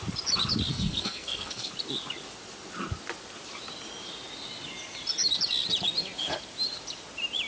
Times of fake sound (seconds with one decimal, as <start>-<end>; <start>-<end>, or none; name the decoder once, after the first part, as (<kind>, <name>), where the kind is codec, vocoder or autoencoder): 0.7-1.7 (codec, SNAC)